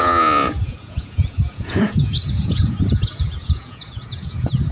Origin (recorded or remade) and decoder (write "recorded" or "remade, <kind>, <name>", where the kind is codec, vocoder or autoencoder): remade, vocoder, Vocos